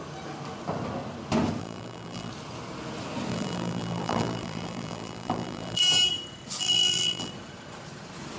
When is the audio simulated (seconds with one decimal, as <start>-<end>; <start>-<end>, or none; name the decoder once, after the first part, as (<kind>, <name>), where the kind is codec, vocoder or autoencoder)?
1.6-2.3 (vocoder, BigVGAN v2); 3.3-5.8; 6.6-7.3